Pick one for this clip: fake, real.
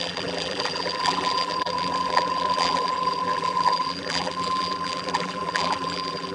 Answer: fake